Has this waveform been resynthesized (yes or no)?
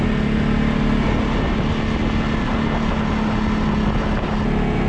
no